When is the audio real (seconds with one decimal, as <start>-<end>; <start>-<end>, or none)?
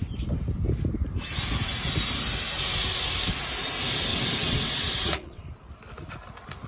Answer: 0.0-4.1; 5.4-6.7